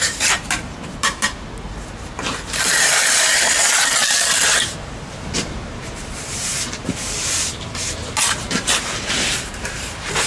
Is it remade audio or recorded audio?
remade